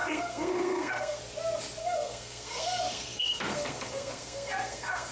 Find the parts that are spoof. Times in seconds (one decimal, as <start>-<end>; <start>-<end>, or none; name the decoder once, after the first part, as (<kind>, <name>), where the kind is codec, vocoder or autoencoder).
0.0-1.2 (codec, SNAC); 1.8-5.1